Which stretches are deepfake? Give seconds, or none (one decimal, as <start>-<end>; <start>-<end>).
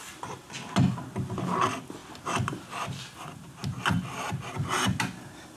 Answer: 2.0-2.6